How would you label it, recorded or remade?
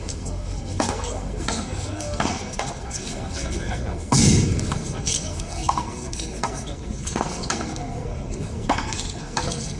remade